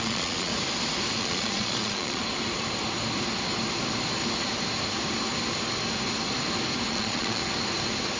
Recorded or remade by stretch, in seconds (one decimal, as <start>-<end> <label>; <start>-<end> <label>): 0.0-0.5 remade; 0.5-1.2 recorded; 1.2-2.2 remade; 2.2-6.9 recorded; 6.9-7.4 remade; 7.4-8.2 recorded